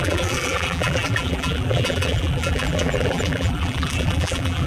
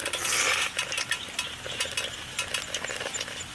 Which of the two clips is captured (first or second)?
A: second